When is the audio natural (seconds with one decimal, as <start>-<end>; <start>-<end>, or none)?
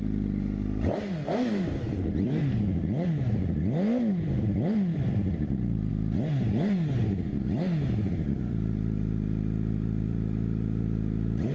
2.4-4.1; 5.9-8.1